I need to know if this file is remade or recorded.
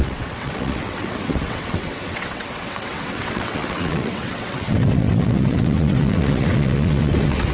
remade